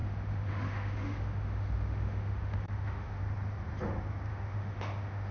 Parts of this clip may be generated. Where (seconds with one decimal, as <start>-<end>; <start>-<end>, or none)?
0.0-3.2; 4.3-5.3